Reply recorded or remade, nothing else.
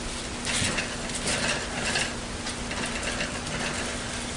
recorded